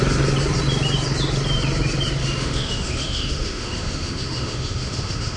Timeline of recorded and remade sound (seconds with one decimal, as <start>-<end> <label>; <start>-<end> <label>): 0.0-2.2 recorded; 2.2-5.4 remade

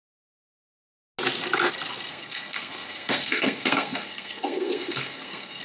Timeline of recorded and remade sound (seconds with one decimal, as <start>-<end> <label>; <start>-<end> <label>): 0.0-2.1 recorded; 2.1-5.6 remade

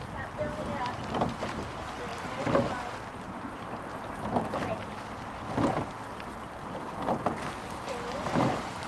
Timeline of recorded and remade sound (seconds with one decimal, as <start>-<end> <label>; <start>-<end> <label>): 0.0-8.9 recorded

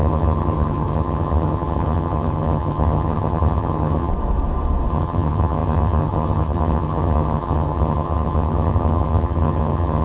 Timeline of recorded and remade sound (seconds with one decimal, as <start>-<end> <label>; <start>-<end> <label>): 0.0-4.1 remade; 4.1-4.9 recorded; 4.9-10.0 remade

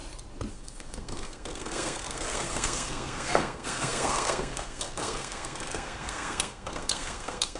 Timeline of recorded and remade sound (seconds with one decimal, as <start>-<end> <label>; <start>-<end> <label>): 0.0-0.5 recorded; 0.5-7.6 remade

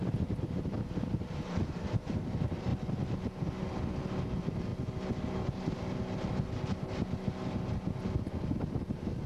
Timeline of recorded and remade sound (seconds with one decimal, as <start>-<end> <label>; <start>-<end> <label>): 0.0-2.7 remade; 2.7-4.2 recorded; 4.2-4.7 remade; 4.7-9.3 recorded